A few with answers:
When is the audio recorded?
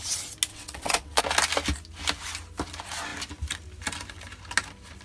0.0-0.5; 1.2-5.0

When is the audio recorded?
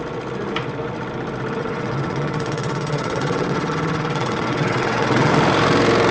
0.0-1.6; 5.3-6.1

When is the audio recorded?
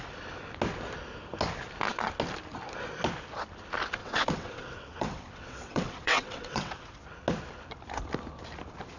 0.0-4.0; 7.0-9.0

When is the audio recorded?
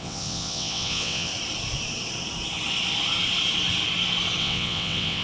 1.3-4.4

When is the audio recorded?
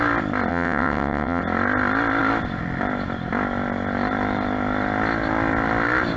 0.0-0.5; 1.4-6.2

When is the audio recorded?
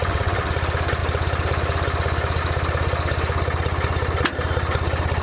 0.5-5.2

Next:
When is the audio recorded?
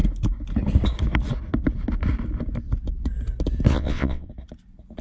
0.0-3.7; 4.3-5.0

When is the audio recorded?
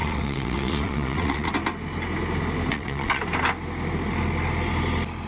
1.5-2.7; 3.2-5.3